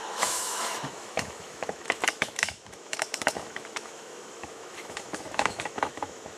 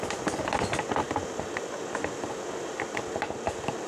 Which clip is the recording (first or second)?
second